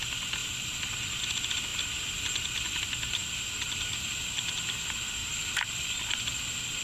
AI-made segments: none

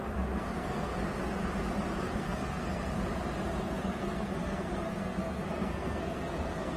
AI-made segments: 0.0-0.9 (codec, SNAC); 2.0-3.0; 3.6-6.8

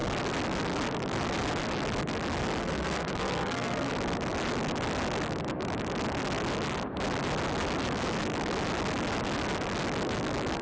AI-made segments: 2.6-3.9 (codec, SNAC)